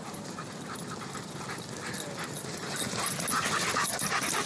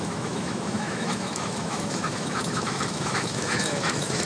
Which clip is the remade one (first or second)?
second